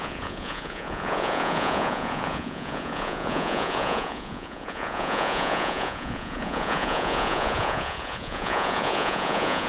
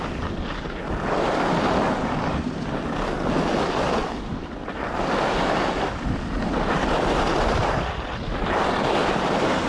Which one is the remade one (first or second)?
first